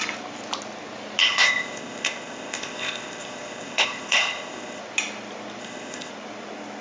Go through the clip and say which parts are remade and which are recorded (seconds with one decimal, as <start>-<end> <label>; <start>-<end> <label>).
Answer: 0.0-1.2 recorded; 1.2-4.8 remade; 4.8-5.6 recorded; 5.6-6.1 remade; 6.1-6.8 recorded